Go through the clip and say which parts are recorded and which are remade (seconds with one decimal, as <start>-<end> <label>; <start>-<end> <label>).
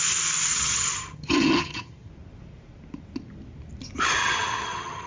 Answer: 0.0-0.5 recorded; 0.5-2.1 remade; 2.1-4.2 recorded; 4.2-5.1 remade